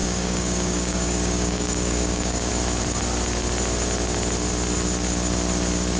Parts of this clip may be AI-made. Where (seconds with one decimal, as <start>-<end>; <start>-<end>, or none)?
0.0-2.5

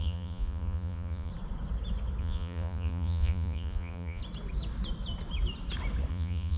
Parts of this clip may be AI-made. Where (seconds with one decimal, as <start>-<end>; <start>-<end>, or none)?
0.0-1.3; 2.2-4.2; 6.1-6.6